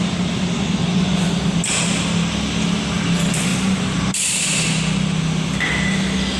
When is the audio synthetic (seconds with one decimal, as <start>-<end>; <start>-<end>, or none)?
0.8-1.3